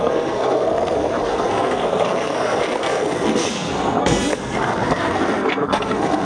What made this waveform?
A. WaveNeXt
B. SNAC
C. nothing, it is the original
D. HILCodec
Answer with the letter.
B